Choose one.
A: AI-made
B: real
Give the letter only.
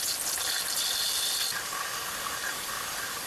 B